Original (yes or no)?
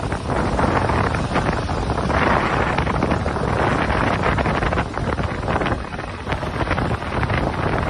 yes